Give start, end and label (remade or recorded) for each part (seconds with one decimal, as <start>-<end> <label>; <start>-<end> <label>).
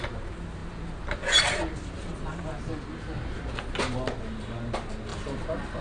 0.0-5.8 recorded